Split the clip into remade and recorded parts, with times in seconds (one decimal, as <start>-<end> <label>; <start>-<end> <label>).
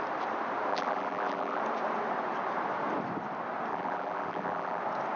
0.0-0.7 recorded; 0.7-1.6 remade; 1.6-3.7 recorded; 3.7-4.8 remade; 4.8-5.2 recorded